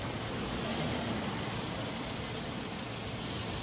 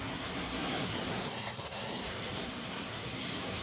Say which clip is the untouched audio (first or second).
first